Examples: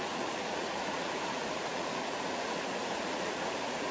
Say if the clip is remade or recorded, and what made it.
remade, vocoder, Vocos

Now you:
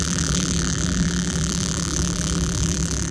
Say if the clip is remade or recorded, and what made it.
remade, vocoder, BigVGAN v2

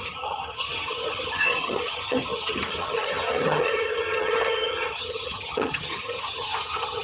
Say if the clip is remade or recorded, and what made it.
remade, vocoder, HiFi-GAN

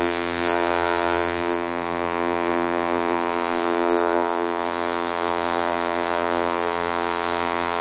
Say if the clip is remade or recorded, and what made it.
remade, vocoder, BigVGAN v2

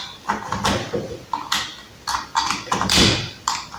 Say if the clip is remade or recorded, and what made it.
remade, vocoder, BigVGAN v2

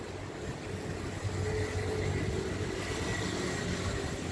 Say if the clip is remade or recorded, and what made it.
recorded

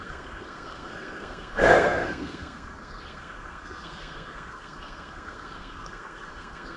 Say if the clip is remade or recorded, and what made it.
remade, codec, SNAC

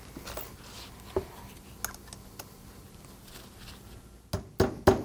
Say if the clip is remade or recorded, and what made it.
recorded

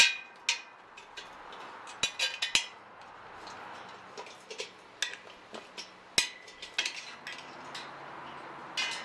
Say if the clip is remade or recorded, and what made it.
recorded